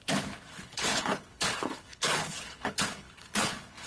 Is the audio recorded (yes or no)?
no